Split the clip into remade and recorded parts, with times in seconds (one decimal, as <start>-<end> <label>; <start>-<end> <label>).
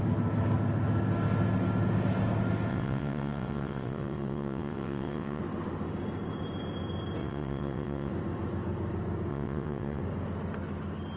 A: 0.0-2.7 recorded; 2.7-5.4 remade; 5.4-7.2 recorded; 7.2-8.1 remade; 8.1-9.3 recorded; 9.3-10.0 remade; 10.0-11.2 recorded